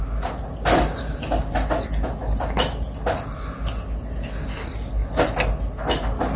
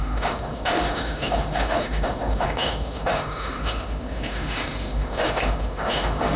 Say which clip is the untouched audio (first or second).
first